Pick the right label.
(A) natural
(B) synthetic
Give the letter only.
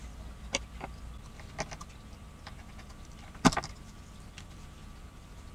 A